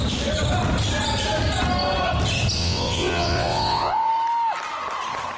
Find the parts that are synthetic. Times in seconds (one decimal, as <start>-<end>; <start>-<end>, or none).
2.6-4.1